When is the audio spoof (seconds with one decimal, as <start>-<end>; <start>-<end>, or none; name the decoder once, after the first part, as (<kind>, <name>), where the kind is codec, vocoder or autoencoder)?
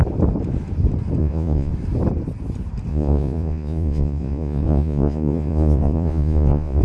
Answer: 1.2-1.7 (vocoder, Vocos); 2.9-6.8